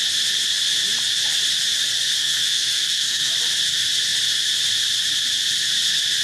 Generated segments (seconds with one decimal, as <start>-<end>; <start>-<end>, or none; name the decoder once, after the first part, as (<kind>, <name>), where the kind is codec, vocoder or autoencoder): 2.2-3.3 (codec, SNAC)

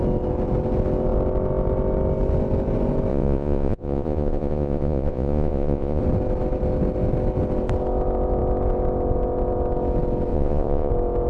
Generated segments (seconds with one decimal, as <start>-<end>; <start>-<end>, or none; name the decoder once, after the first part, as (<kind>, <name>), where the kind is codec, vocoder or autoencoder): 3.1-6.0 (vocoder, Vocos); 10.3-10.9